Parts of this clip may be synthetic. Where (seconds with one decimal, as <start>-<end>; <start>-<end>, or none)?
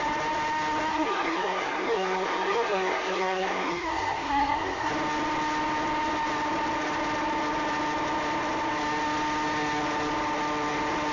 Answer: 0.9-4.9